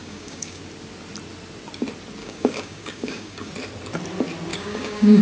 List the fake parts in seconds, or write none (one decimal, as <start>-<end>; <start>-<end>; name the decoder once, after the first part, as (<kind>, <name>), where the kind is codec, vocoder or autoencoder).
0.0-0.6 (codec, DAC); 2.2-3.5; 4.5-5.2

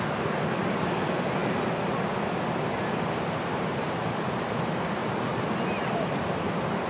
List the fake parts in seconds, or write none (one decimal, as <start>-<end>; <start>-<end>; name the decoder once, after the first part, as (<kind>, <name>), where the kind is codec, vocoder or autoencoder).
none